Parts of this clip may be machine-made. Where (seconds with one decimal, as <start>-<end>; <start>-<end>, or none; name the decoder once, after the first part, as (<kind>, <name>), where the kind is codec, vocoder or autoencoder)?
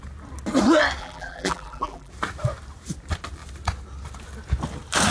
1.0-2.1 (vocoder, BigVGAN v2)